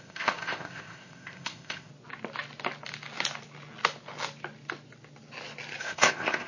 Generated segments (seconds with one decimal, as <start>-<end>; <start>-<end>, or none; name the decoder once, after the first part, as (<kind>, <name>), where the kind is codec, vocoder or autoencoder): 0.0-1.9 (codec, ZipCodec); 5.8-6.5